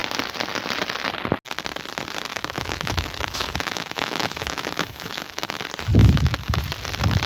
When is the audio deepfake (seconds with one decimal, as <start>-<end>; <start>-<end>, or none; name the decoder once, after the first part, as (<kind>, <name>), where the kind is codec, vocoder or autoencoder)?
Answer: 2.3-5.6 (autoencoder, DAC-VAE); 6.0-6.6